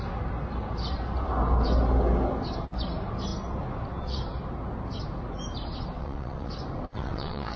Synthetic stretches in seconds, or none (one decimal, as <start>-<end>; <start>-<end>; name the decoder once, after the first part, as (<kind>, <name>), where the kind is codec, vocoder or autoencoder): 6.0-6.5 (vocoder, WaveNeXt); 6.9-7.6